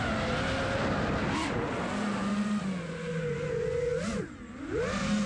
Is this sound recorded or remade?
recorded